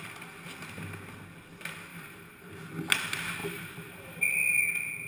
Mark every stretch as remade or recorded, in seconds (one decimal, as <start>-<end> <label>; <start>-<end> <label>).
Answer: 0.0-1.9 recorded; 1.9-2.5 remade; 2.5-3.4 recorded; 3.4-4.2 remade; 4.2-5.1 recorded